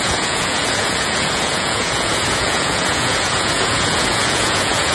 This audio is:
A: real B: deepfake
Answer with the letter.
B